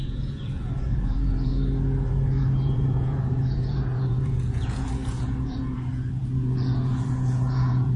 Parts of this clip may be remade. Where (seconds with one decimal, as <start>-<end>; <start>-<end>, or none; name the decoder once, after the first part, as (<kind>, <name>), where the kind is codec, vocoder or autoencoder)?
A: 0.0-1.5 (vocoder, Vocos); 2.1-8.0